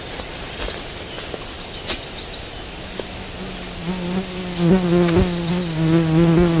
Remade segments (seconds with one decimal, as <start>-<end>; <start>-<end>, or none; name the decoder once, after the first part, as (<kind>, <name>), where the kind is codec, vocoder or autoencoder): none